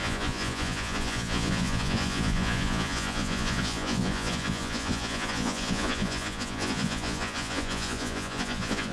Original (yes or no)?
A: no